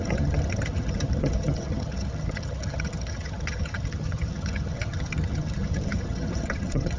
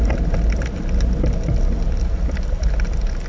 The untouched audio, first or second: second